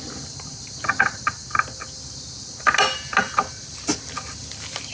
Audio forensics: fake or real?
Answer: real